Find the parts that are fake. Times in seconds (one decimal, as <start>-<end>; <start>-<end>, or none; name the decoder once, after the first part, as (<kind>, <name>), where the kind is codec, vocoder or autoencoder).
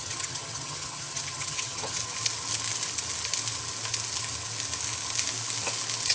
0.0-2.0 (vocoder, HiFi-GAN)